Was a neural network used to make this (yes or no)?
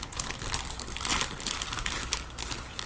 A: no